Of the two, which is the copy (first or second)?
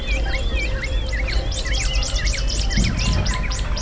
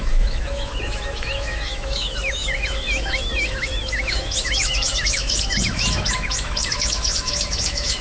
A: second